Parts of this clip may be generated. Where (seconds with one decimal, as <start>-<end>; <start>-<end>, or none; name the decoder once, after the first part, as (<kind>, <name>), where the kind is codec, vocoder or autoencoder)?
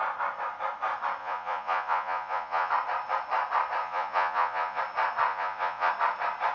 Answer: 1.2-2.7 (vocoder, Vocos); 3.8-4.8; 5.3-5.9